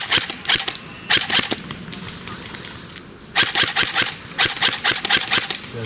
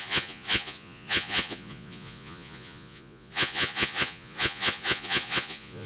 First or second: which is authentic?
first